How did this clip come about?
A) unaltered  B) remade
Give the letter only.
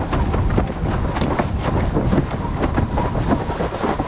A